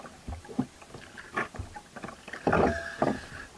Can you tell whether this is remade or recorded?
recorded